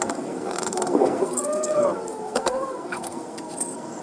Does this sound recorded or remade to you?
remade